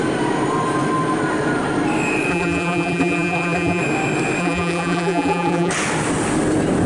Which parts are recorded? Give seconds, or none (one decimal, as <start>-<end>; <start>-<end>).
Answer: 0.0-2.3; 3.8-4.4; 5.7-6.9